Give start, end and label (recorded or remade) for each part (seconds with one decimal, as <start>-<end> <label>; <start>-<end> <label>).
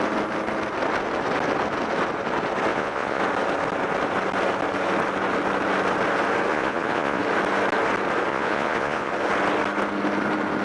0.0-2.7 recorded; 2.7-3.2 remade; 3.2-6.5 recorded; 6.5-7.2 remade; 7.2-8.3 recorded; 8.3-9.1 remade; 9.1-10.6 recorded